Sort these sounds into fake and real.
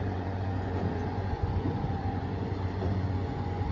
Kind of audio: fake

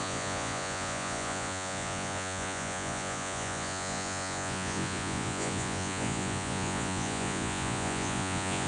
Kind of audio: fake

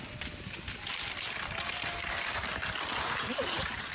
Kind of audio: real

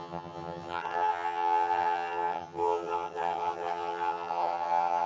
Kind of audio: fake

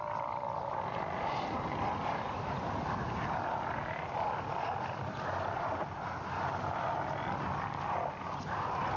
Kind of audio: real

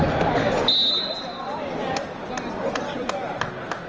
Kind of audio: real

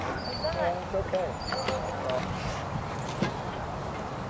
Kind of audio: real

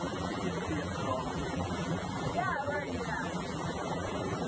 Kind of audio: fake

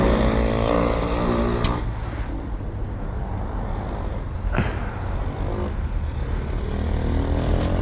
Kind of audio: real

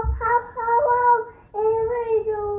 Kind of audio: real